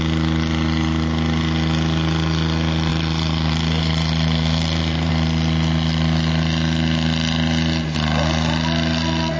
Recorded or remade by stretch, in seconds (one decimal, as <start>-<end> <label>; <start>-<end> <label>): 0.0-2.9 recorded; 2.9-5.1 remade; 5.1-9.4 recorded